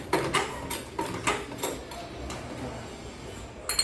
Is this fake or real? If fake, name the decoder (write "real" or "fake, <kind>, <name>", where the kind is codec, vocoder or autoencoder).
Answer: real